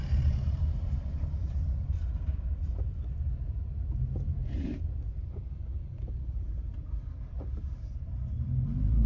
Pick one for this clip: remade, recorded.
remade